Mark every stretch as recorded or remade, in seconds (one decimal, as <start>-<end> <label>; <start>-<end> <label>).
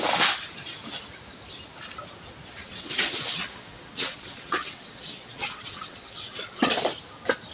0.0-2.6 recorded; 2.6-6.7 remade; 6.7-7.5 recorded